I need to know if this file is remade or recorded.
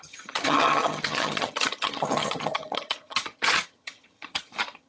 remade